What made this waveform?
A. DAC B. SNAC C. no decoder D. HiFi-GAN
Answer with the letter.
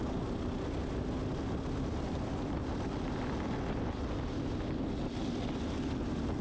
C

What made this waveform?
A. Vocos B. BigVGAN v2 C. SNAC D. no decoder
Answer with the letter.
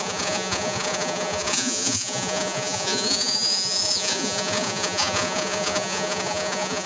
A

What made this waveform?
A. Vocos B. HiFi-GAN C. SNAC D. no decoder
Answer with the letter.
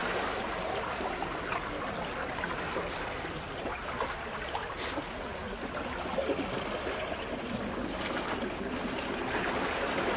D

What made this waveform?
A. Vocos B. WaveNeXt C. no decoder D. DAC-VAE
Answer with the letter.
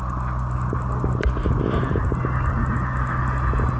C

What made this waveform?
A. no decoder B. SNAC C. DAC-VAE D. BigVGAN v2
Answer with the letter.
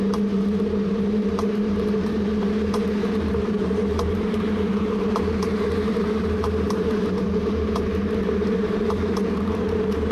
D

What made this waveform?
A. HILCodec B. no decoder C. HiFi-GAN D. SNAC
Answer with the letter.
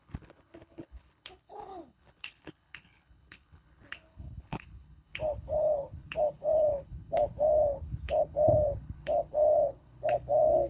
A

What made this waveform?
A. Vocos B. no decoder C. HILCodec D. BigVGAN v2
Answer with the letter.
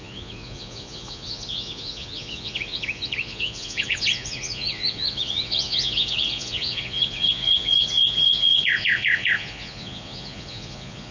A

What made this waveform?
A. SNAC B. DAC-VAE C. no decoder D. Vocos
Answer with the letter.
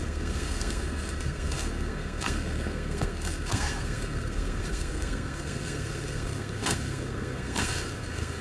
A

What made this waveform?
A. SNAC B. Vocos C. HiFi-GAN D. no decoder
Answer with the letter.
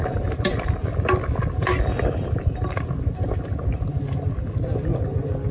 D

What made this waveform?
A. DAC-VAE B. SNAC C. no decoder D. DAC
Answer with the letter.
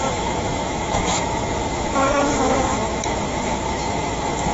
A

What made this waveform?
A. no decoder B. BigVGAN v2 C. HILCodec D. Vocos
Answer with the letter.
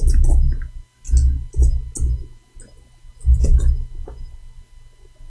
A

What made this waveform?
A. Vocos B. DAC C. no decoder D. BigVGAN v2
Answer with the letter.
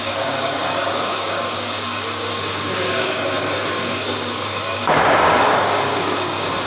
B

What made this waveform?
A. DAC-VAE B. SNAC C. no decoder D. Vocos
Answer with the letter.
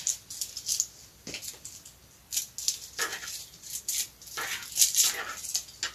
C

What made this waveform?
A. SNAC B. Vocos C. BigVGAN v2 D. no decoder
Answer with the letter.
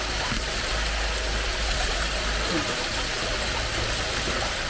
D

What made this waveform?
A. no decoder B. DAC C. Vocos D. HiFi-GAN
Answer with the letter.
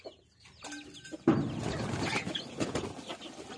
A